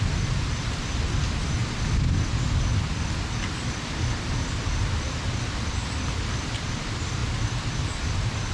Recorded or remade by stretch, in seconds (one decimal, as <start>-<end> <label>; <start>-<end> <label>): 0.0-8.5 recorded